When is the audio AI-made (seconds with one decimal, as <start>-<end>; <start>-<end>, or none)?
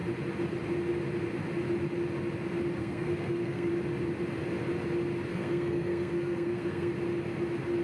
2.8-3.7; 5.3-6.9